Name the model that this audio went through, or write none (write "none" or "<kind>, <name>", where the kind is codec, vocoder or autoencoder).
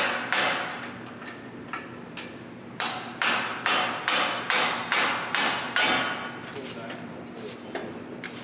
none